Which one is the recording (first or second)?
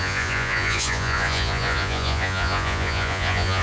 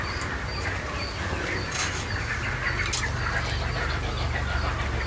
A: second